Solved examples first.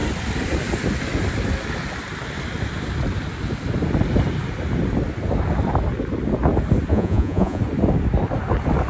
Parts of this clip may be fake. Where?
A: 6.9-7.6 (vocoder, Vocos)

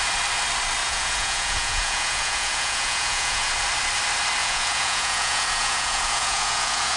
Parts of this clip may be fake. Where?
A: 0.8-3.5 (vocoder, Vocos); 4.4-7.0

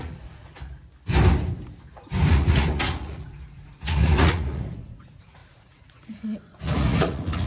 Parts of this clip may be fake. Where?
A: 0.0-0.5 (vocoder, Vocos); 2.3-7.5

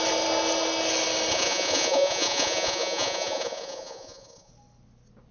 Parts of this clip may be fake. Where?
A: 1.3-4.5 (vocoder, Vocos)